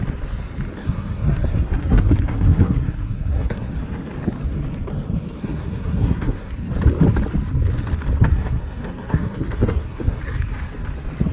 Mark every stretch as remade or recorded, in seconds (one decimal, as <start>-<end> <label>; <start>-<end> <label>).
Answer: 0.0-0.8 recorded; 0.8-3.7 remade; 3.7-5.4 recorded; 5.4-6.5 remade; 6.5-8.3 recorded; 8.3-10.2 remade; 10.2-11.3 recorded